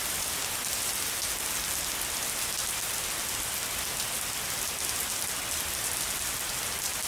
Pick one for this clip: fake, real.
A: real